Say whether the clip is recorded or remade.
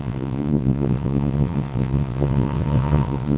remade